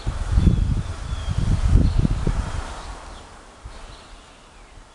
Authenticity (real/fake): real